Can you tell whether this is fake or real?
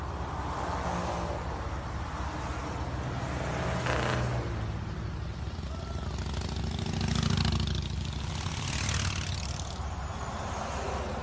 real